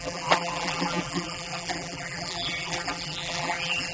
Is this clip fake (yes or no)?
yes